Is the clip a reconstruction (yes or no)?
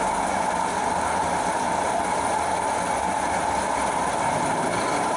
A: no